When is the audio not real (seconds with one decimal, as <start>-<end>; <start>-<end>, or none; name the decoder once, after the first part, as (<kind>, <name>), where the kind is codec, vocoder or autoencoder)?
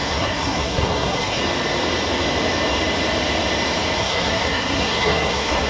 0.0-1.4 (codec, SNAC); 4.0-5.7